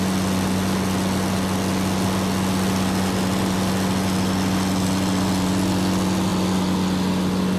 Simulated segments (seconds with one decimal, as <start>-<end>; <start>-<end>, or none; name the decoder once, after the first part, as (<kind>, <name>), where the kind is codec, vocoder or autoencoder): none